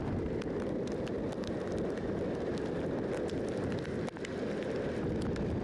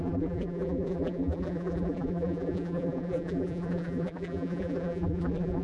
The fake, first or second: second